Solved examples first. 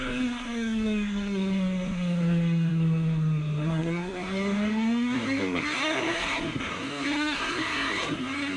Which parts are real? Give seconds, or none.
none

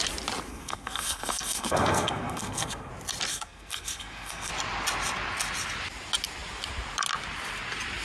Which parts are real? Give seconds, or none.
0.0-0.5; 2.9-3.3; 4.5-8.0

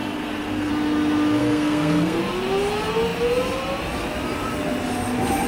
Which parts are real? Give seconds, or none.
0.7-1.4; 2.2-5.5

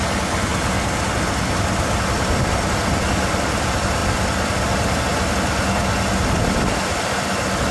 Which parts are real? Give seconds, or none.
0.0-7.7